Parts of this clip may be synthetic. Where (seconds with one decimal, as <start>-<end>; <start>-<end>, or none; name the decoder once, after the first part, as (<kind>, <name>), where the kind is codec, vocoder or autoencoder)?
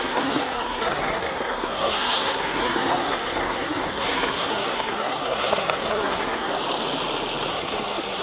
0.0-6.5 (codec, SNAC); 7.5-8.2